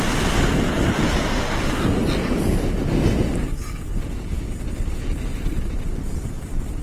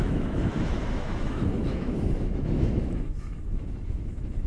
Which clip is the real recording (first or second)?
first